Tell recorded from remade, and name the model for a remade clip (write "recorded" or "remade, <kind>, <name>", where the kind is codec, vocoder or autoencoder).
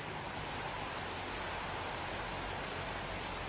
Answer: recorded